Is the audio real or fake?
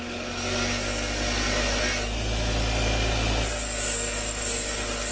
real